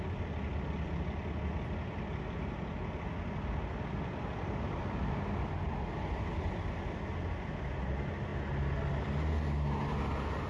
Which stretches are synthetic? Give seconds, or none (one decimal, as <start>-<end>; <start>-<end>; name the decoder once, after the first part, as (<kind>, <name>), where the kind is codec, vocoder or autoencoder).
none